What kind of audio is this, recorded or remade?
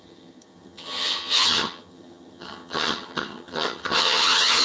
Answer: remade